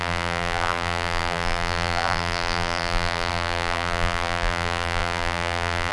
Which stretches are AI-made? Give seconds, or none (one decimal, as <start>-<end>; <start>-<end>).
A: 0.0-5.9